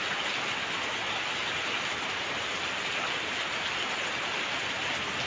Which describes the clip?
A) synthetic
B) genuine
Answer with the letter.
B